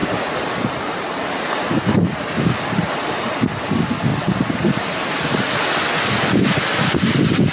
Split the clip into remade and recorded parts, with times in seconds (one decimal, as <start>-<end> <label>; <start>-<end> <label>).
0.0-1.7 remade; 1.7-4.1 recorded; 4.1-5.1 remade; 5.1-7.5 recorded